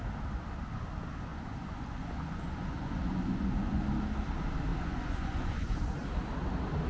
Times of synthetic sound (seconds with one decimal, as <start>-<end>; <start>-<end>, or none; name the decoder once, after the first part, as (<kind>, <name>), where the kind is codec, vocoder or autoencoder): 1.3-3.8 (vocoder, Vocos); 4.7-5.8